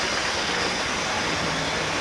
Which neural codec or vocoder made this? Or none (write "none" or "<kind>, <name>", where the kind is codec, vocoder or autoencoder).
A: none